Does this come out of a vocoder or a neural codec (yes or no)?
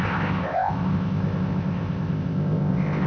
yes